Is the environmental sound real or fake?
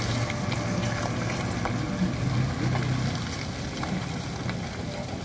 real